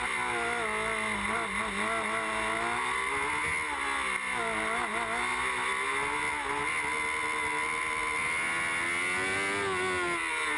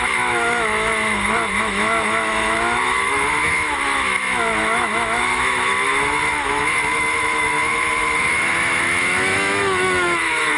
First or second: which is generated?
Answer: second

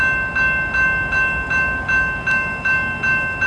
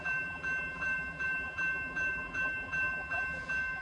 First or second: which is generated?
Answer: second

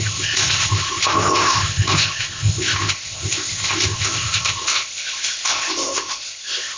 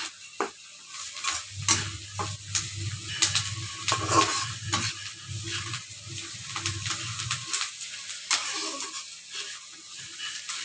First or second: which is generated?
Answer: first